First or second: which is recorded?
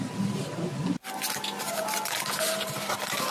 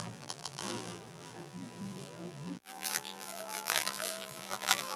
first